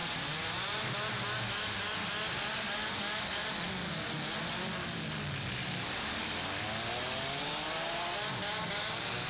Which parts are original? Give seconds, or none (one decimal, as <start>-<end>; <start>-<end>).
0.9-9.3